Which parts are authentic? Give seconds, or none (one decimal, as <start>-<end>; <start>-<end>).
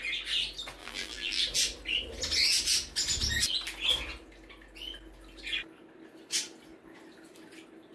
0.0-0.8; 1.4-7.9